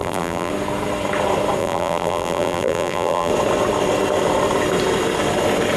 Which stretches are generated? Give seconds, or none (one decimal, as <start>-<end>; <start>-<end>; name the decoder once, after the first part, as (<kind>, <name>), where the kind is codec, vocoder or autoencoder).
0.0-0.5 (vocoder, BigVGAN v2); 1.6-3.3